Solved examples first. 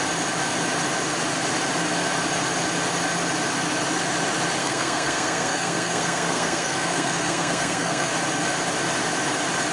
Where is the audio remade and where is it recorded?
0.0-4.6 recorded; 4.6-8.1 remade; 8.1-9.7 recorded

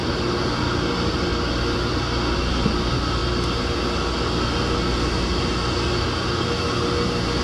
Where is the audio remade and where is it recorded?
0.0-7.4 recorded